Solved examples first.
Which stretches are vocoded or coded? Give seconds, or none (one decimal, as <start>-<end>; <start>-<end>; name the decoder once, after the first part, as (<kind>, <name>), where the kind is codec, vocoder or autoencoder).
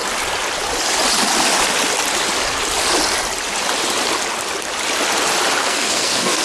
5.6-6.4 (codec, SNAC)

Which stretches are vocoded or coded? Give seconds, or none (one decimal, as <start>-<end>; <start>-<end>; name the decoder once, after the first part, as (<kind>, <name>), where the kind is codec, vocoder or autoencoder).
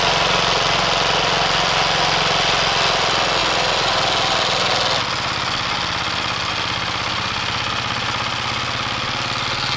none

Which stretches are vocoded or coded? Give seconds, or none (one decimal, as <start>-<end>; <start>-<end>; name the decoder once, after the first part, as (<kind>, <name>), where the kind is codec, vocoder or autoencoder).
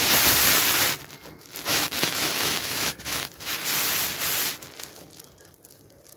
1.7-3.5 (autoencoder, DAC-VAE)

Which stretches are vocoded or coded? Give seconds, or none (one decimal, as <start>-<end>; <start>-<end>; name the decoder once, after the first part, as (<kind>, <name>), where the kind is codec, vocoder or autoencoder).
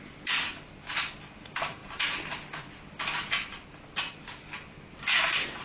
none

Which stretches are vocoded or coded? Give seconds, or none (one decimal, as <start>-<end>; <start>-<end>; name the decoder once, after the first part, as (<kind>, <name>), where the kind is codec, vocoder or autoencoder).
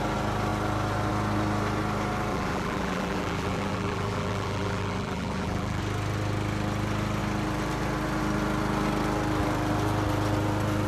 2.3-5.8 (vocoder, BigVGAN v2)